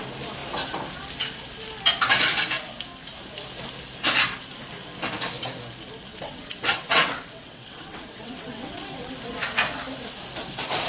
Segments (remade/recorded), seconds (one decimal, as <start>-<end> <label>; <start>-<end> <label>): 0.0-6.1 recorded; 6.1-9.1 remade; 9.1-10.9 recorded